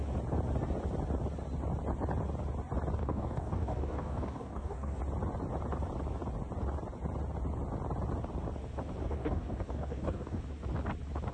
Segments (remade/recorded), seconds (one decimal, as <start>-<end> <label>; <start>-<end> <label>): 0.0-3.0 recorded; 3.0-5.0 remade; 5.0-9.0 recorded; 9.0-10.4 remade; 10.4-11.3 recorded